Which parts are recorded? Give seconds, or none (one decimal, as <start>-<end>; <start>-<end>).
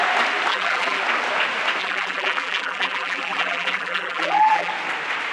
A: 0.0-0.5; 1.0-1.8; 4.7-5.3